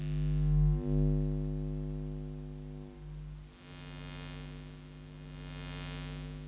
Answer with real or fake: real